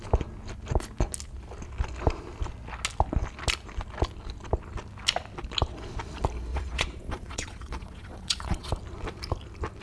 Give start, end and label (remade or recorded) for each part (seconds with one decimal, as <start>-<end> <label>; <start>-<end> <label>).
0.0-6.5 recorded; 6.5-8.7 remade; 8.7-9.8 recorded